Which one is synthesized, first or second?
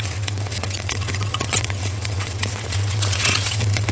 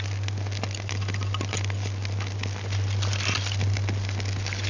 first